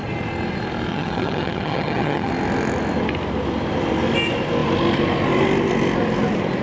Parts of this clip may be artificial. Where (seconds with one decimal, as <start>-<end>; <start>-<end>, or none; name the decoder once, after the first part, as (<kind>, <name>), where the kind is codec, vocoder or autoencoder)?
0.9-2.3 (vocoder, HiFi-GAN)